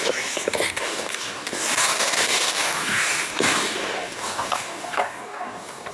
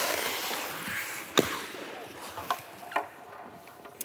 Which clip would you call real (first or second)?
second